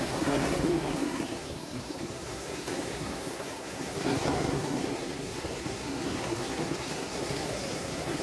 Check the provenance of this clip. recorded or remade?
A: remade